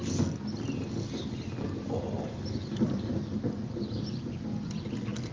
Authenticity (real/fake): real